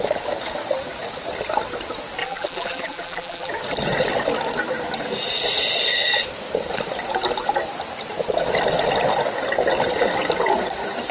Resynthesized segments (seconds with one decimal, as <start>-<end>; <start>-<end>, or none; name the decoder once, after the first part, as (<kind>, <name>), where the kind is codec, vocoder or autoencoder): 2.2-3.5 (vocoder, BigVGAN v2)